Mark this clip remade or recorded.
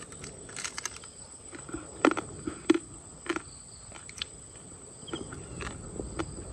recorded